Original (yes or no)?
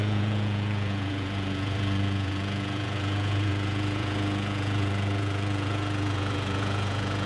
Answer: no